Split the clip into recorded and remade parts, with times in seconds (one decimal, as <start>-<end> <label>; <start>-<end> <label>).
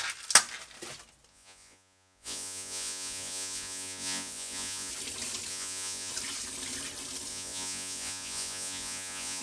0.0-1.3 recorded; 1.3-4.9 remade; 4.9-5.5 recorded; 5.5-6.1 remade; 6.1-7.3 recorded; 7.3-9.4 remade